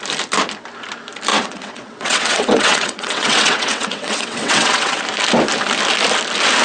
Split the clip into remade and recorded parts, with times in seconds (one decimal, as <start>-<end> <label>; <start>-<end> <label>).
0.0-1.3 recorded; 1.3-5.0 remade; 5.0-6.6 recorded